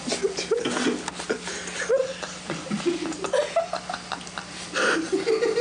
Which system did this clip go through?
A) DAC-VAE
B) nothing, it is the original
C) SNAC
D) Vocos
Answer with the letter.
B